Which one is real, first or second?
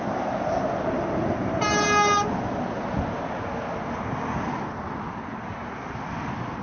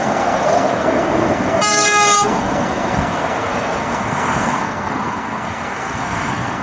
first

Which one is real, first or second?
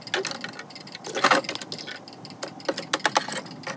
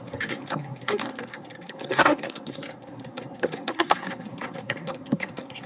first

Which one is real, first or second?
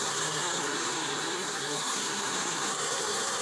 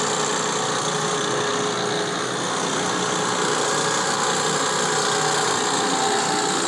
second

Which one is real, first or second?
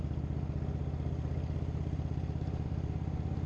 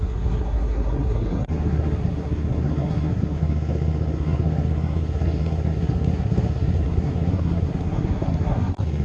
first